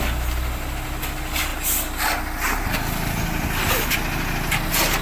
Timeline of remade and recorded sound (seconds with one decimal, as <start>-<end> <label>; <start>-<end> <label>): 0.0-5.0 recorded

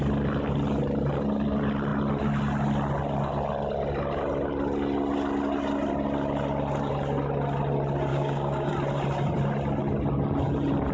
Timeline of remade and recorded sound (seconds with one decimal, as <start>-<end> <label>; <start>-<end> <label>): 0.0-8.1 recorded; 8.1-8.7 remade; 8.7-10.9 recorded

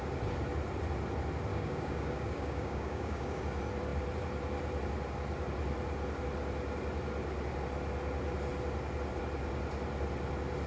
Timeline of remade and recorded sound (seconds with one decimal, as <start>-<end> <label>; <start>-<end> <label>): 0.0-1.5 recorded; 1.5-3.4 remade; 3.4-10.7 recorded

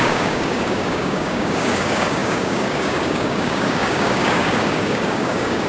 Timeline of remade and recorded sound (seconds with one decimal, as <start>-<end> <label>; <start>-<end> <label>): 0.0-5.7 remade

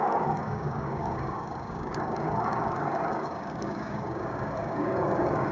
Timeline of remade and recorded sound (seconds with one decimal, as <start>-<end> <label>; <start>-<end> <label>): 0.0-5.5 remade

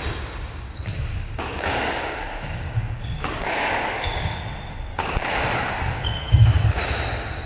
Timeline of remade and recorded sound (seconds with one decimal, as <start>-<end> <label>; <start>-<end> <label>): 0.0-1.1 recorded; 1.1-4.4 remade; 4.4-4.9 recorded; 4.9-6.9 remade; 6.9-7.5 recorded

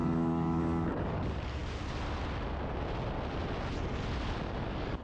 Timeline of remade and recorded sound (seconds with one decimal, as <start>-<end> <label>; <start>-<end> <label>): 0.0-1.6 remade; 1.6-4.6 recorded; 4.6-5.0 remade